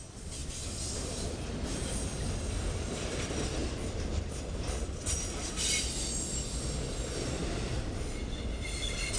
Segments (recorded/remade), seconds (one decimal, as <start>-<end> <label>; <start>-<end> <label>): 0.0-9.2 recorded